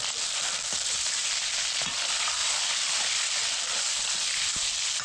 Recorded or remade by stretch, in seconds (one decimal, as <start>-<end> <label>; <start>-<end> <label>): 0.0-2.4 recorded; 2.4-3.5 remade; 3.5-5.0 recorded